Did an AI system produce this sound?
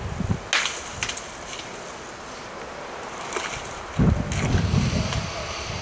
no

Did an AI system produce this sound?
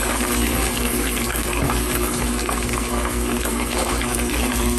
yes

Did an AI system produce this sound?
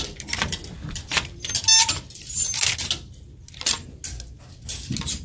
no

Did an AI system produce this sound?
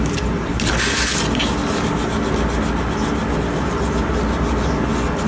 no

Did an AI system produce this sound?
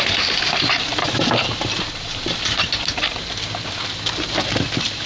no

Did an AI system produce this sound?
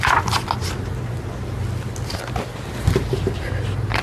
no